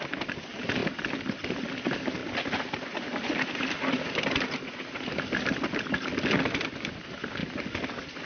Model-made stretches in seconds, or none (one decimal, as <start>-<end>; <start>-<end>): 7.4-8.3